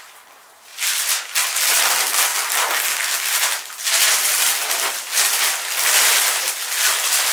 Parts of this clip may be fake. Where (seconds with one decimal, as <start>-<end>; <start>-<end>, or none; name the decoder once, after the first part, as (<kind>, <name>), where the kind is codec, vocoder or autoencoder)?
none